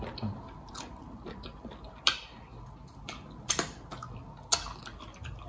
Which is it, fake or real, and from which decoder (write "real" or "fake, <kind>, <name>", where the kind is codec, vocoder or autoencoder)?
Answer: real